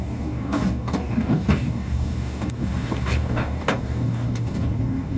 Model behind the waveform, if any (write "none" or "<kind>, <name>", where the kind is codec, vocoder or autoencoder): codec, DAC